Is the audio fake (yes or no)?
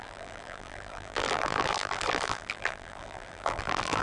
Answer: yes